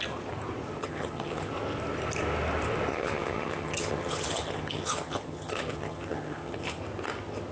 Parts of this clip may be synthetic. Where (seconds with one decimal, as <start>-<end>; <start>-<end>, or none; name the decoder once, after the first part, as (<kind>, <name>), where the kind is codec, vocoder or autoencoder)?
0.8-1.5 (vocoder, HiFi-GAN); 2.9-6.8